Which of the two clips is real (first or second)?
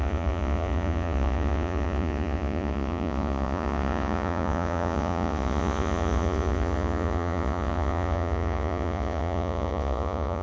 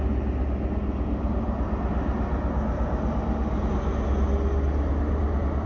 second